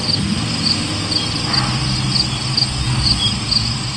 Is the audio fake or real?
real